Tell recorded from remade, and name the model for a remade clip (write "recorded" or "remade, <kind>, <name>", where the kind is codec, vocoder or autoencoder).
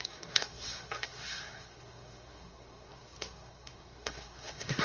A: remade, codec, SNAC